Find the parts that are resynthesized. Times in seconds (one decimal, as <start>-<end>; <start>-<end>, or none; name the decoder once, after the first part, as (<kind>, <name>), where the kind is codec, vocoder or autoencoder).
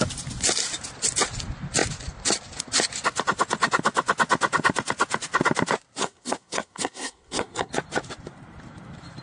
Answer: 6.0-7.7 (codec, SNAC)